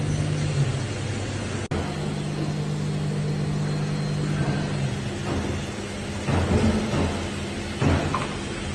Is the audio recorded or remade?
recorded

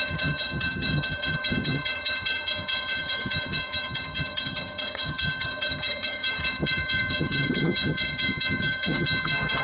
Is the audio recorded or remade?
remade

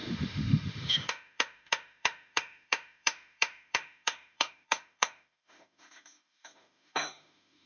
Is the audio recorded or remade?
remade